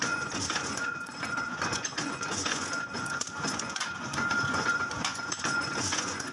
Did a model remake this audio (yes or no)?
yes